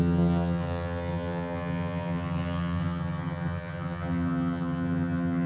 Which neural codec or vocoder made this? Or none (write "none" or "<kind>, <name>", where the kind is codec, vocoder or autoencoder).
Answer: vocoder, HiFi-GAN